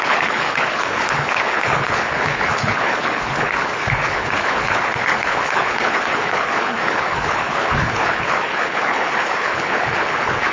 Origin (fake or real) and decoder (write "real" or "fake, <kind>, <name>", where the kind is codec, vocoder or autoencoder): fake, codec, HILCodec